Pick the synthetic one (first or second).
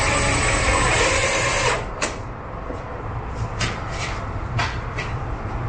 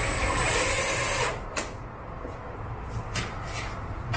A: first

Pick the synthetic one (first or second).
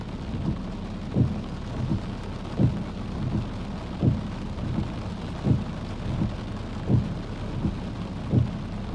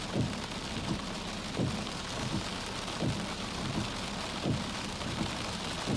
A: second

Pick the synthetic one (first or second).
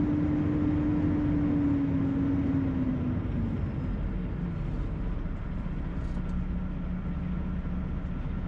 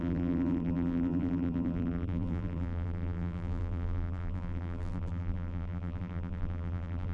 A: second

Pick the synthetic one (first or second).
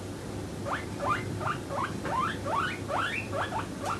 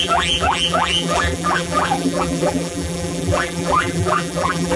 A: second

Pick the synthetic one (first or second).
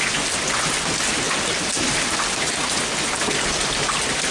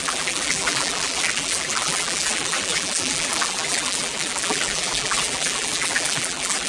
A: second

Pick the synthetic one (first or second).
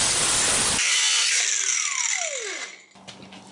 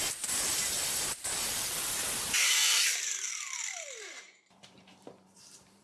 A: second